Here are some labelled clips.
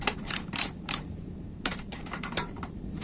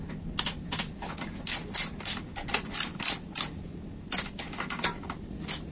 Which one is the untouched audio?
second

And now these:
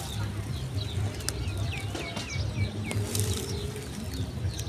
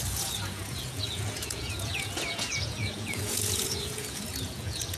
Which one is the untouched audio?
first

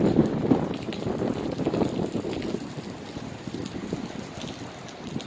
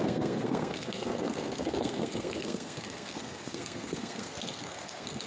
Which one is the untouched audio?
first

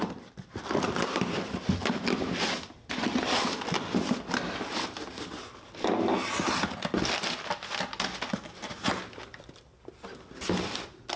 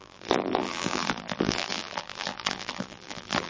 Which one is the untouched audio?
first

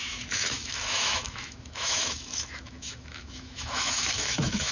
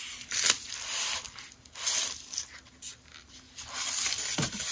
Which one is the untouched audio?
second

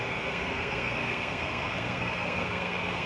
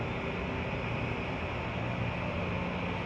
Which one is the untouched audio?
second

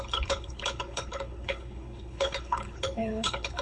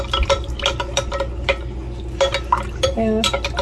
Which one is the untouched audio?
second